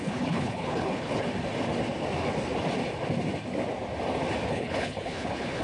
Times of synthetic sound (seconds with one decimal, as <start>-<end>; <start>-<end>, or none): 0.0-1.1; 4.5-5.6